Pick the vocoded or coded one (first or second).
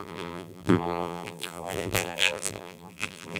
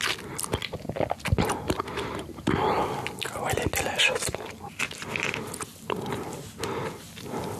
first